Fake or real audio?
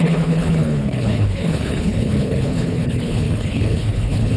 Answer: fake